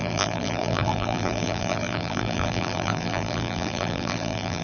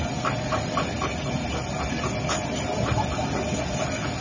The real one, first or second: second